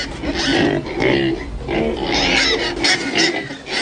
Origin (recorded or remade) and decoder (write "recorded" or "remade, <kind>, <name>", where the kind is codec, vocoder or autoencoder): recorded